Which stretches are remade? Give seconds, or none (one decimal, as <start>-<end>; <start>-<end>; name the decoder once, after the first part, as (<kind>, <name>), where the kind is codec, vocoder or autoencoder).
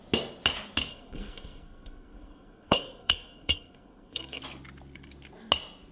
0.9-4.4 (codec, SNAC)